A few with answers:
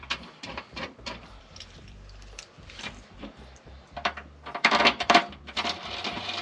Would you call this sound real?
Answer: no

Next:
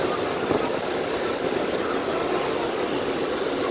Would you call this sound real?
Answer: yes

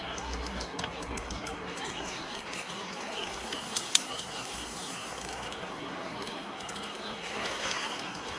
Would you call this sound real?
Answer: no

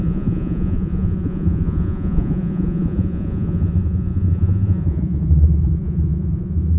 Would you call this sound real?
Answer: no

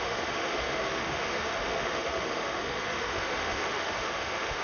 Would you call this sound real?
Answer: no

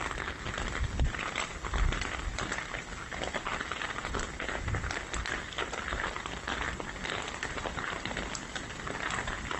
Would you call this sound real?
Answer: yes